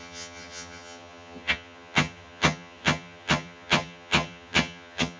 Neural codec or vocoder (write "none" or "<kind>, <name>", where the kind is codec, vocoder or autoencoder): vocoder, HiFi-GAN